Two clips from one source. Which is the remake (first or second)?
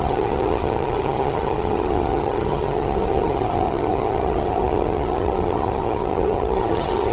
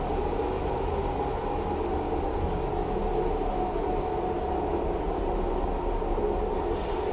first